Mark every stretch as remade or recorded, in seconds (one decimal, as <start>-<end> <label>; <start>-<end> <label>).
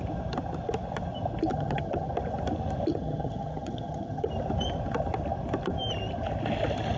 0.0-1.5 recorded; 1.5-2.1 remade; 2.1-2.9 recorded; 2.9-4.3 remade; 4.3-7.0 recorded